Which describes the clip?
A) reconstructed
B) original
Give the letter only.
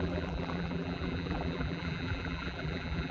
A